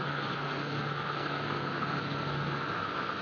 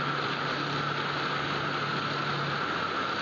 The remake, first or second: first